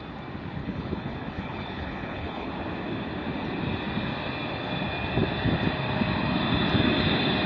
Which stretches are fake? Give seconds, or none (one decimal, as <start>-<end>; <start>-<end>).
0.6-2.5

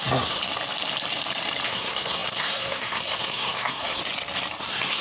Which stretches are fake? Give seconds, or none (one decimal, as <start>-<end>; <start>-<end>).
0.0-0.4; 1.7-4.0; 4.6-5.0

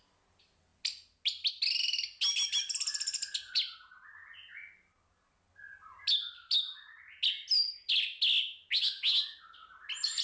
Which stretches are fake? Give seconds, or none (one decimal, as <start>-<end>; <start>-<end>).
none